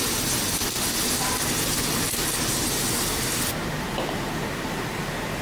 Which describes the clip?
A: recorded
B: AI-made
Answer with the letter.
A